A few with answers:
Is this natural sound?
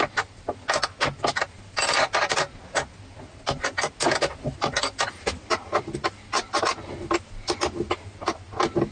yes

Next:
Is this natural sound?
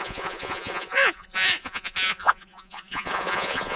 no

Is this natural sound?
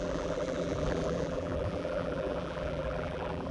no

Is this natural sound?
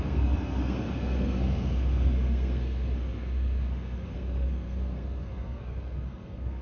no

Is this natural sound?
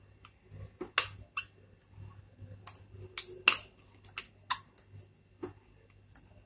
yes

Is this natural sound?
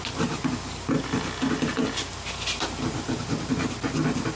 yes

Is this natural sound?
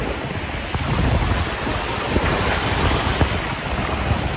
yes